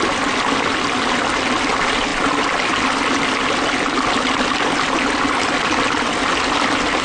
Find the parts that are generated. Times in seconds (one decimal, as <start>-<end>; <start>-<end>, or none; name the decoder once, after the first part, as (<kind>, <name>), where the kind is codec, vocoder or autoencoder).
none